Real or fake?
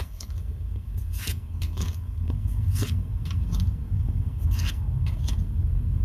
fake